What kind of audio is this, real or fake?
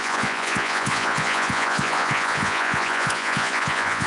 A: fake